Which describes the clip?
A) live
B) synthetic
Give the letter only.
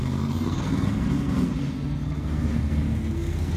B